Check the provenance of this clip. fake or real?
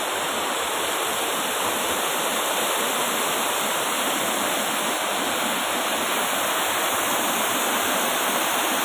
real